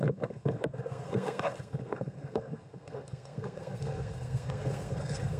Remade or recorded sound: remade